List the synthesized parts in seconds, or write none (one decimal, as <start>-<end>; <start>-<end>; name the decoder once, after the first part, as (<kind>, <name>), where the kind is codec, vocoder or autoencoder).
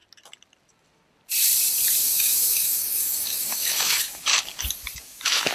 2.0-4.3 (autoencoder, DAC-VAE); 5.0-5.5